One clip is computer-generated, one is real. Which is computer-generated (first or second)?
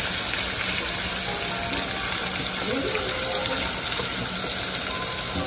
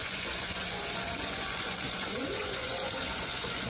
second